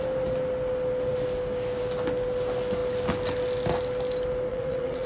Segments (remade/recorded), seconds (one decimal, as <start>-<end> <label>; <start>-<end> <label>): 0.0-4.5 recorded; 4.5-5.1 remade